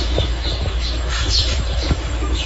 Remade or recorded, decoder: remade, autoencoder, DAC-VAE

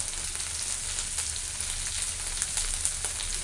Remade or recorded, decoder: recorded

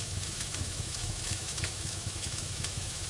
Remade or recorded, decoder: remade, autoencoder, DAC-VAE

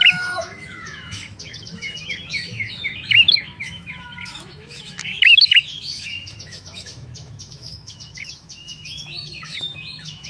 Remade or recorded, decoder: remade, autoencoder, DAC-VAE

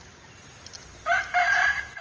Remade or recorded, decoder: recorded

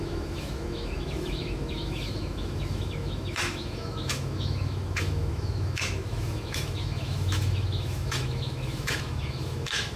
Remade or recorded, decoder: remade, autoencoder, DAC-VAE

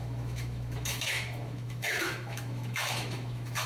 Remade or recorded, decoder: remade, autoencoder, DAC-VAE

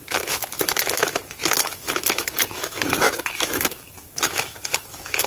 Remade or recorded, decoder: remade, autoencoder, DAC-VAE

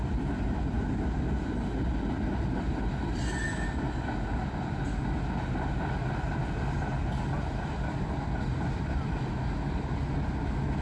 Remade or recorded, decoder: recorded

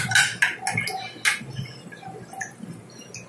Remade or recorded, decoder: recorded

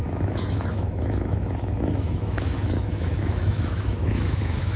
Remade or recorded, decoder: remade, autoencoder, DAC-VAE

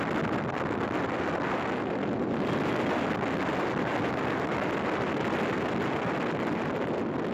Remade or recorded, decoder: recorded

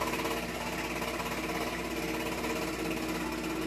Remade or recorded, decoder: recorded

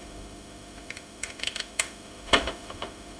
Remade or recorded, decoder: remade, autoencoder, DAC-VAE